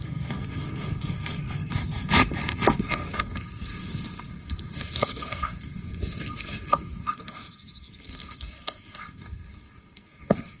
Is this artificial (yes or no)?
yes